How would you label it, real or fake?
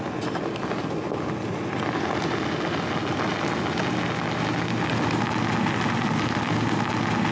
real